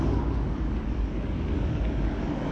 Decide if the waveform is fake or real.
fake